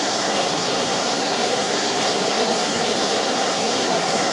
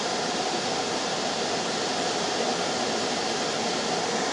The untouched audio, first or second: second